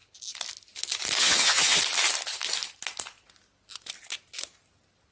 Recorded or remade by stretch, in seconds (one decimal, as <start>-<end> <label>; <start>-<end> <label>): 0.0-1.2 recorded; 1.2-1.8 remade; 1.8-5.1 recorded